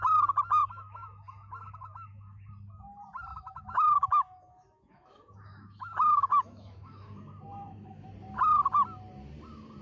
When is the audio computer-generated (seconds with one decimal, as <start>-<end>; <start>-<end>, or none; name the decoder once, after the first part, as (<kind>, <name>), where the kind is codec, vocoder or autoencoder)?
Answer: 0.6-2.5 (autoencoder, DAC-VAE); 3.3-8.1